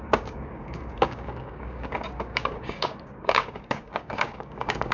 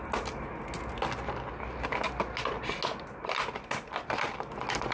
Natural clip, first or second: second